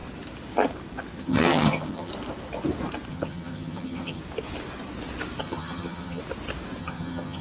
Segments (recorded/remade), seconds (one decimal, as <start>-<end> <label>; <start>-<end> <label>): 0.0-1.2 recorded; 1.2-2.1 remade; 2.1-3.1 recorded; 3.1-4.2 remade; 4.2-5.4 recorded; 5.4-6.2 remade; 6.2-6.8 recorded; 6.8-7.4 remade